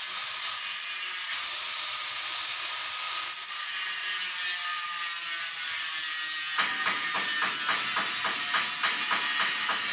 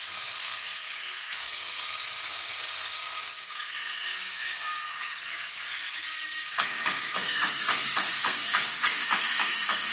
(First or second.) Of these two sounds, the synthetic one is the second